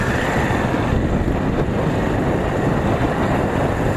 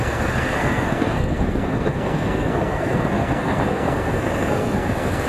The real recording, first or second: first